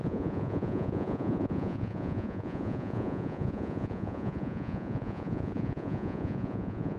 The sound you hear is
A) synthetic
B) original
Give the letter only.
A